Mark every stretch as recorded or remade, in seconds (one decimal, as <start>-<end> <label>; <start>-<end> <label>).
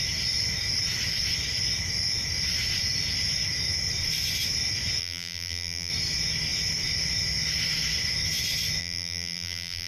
0.0-5.0 recorded; 5.0-5.9 remade; 5.9-8.8 recorded; 8.8-9.9 remade